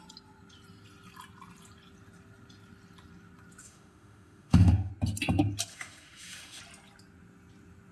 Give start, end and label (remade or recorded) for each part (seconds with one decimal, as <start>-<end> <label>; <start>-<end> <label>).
0.0-3.6 recorded; 3.6-4.9 remade; 4.9-5.7 recorded; 5.7-6.6 remade; 6.6-7.9 recorded